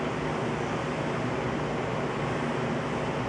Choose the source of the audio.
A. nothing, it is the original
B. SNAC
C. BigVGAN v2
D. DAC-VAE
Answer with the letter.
A